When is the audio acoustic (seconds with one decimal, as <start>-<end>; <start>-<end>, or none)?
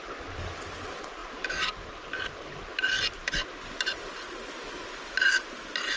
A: 0.0-6.0